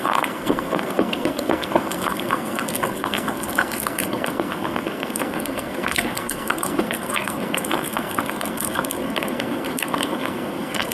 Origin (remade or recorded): remade